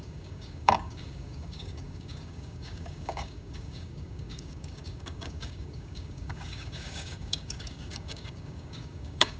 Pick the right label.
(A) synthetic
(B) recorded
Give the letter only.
A